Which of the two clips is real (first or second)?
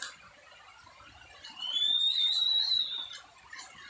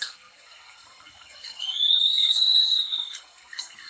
first